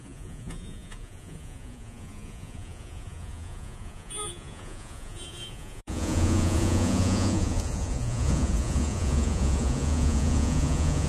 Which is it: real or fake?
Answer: fake